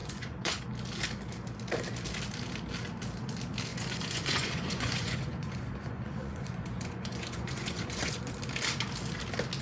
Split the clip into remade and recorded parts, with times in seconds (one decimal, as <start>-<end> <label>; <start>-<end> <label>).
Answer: 0.0-0.6 remade; 0.6-3.7 recorded; 3.7-8.3 remade; 8.3-9.6 recorded